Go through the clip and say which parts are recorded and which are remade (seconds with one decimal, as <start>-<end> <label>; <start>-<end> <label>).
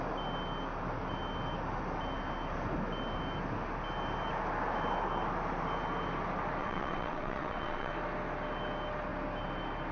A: 0.0-6.6 recorded; 6.6-7.9 remade; 7.9-9.9 recorded